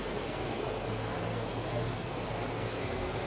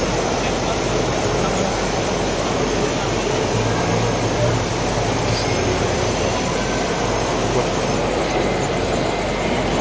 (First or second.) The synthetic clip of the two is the first